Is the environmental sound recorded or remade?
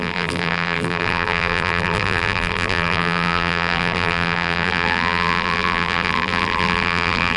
remade